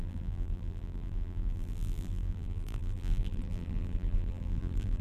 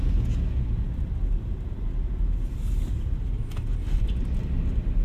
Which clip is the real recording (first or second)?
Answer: second